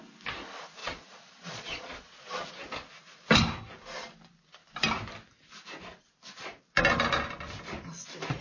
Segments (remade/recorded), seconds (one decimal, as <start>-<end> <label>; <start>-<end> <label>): 0.0-0.8 recorded; 0.8-2.5 remade; 2.5-8.4 recorded